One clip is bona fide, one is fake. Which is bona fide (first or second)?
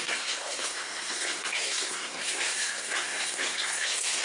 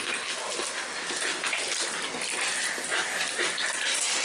second